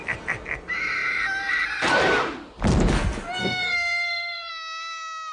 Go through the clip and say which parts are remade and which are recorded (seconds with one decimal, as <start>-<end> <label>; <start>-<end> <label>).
0.0-3.4 recorded; 3.4-4.5 remade; 4.5-5.3 recorded